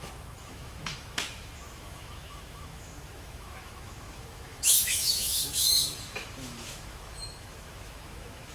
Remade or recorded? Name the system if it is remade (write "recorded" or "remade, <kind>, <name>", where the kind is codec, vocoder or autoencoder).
remade, autoencoder, DAC-VAE